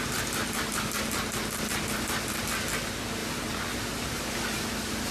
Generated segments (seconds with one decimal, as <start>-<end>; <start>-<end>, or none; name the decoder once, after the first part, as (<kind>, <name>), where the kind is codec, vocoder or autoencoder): none